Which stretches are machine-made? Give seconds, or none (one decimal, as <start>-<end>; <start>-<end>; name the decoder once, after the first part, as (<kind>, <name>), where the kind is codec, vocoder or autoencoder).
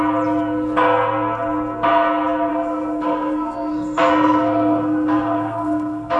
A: 2.5-6.2 (codec, SNAC)